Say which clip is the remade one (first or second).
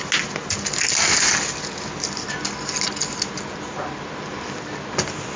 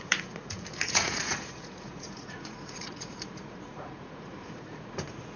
second